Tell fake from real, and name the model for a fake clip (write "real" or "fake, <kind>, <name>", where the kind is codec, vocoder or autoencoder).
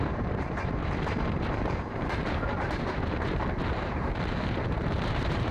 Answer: fake, vocoder, BigVGAN v2